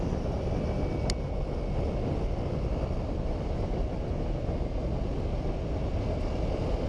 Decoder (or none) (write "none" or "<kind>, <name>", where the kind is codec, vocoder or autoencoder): none